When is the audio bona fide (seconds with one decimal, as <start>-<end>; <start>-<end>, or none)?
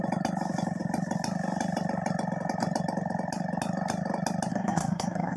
0.0-4.5